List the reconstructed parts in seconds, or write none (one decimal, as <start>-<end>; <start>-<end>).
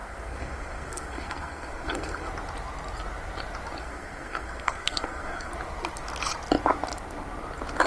0.0-2.3; 3.8-5.5